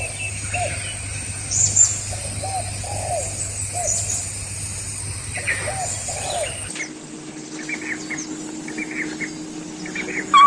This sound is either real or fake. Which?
real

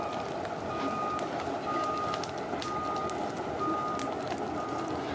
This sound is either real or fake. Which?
real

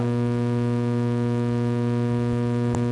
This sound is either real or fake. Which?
real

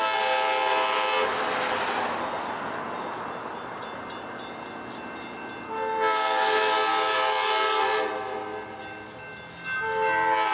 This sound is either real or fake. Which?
real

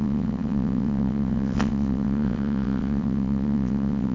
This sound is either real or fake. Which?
fake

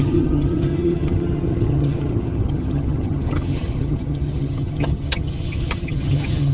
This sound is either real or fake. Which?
fake